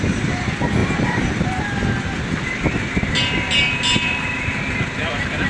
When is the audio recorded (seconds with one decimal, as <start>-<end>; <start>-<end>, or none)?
0.0-0.8; 1.6-5.5